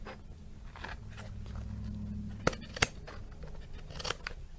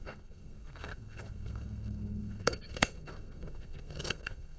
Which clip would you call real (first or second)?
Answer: first